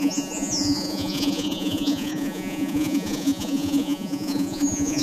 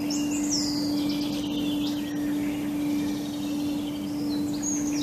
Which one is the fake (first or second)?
first